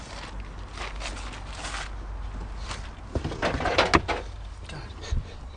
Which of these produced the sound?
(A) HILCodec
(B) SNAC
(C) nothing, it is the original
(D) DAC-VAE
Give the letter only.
C